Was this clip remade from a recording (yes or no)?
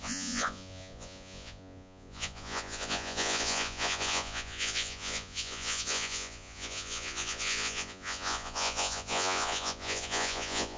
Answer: yes